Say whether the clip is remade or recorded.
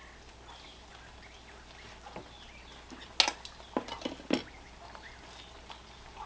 recorded